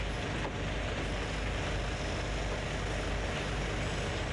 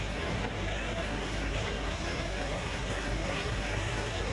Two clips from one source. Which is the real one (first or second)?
first